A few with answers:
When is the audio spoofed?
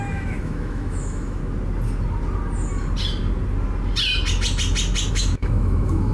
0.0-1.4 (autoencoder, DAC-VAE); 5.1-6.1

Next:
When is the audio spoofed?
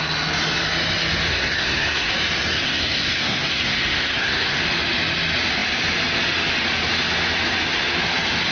1.3-2.1 (codec, SNAC); 2.5-4.6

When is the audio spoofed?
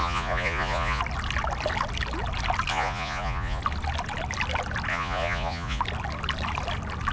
0.0-1.0 (vocoder, Vocos); 2.7-3.6; 4.9-5.8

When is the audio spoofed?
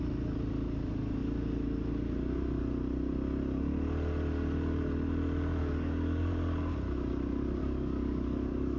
5.6-6.3 (codec, DAC); 7.6-8.8